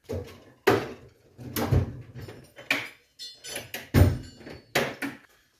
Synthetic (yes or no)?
no